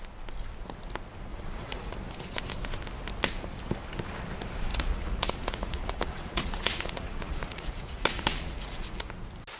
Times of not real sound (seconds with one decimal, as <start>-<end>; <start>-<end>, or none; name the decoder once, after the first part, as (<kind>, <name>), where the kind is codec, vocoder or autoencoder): 1.3-1.9 (vocoder, Vocos); 4.7-9.1